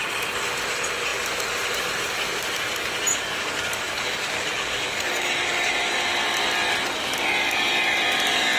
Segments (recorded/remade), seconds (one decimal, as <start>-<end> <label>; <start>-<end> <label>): 0.0-3.1 recorded; 3.1-5.7 remade; 5.7-8.6 recorded